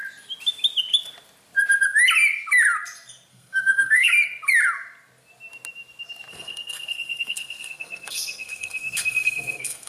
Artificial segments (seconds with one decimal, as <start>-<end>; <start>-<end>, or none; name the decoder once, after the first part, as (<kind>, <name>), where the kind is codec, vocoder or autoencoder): 3.3-4.1 (codec, SNAC); 6.3-9.9